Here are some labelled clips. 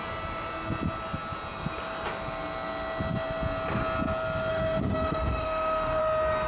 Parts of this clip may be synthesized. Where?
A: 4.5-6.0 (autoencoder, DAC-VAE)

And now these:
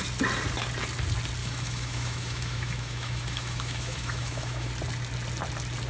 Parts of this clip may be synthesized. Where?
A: 1.4-4.7 (autoencoder, DAC-VAE)

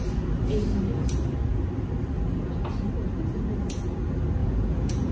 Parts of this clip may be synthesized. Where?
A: 4.4-5.1 (vocoder, Vocos)